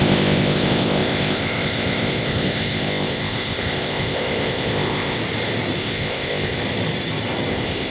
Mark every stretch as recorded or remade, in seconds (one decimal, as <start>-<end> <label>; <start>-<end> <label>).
0.0-5.2 remade; 5.2-5.8 recorded; 5.8-6.6 remade; 6.6-7.5 recorded; 7.5-7.9 remade